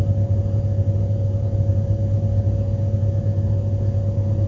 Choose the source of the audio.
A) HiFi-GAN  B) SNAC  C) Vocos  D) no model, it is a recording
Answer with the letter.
D